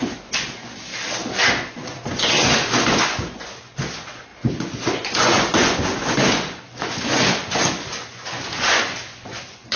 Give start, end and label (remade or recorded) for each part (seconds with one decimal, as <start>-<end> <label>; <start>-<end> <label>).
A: 0.0-0.9 remade; 0.9-1.5 recorded; 1.5-9.8 remade